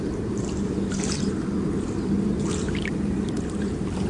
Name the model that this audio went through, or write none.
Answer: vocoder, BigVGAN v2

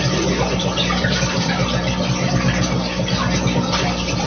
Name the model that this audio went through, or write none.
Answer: vocoder, BigVGAN v2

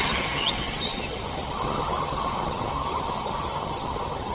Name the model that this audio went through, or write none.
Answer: vocoder, HiFi-GAN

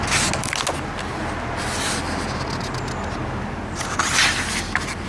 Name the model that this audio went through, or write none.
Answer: none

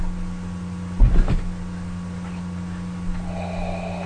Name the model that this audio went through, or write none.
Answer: none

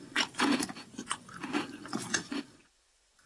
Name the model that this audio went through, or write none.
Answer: vocoder, Vocos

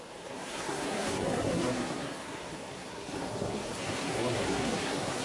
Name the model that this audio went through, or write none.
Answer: codec, SNAC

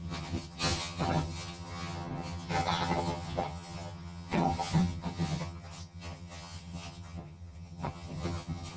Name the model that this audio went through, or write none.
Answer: vocoder, HiFi-GAN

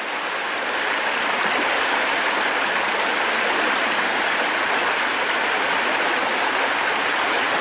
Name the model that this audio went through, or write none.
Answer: none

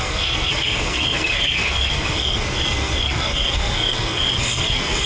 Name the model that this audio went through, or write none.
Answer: codec, SNAC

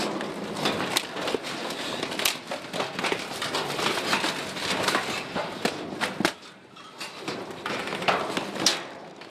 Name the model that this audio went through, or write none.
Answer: none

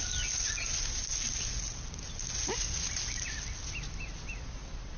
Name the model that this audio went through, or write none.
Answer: none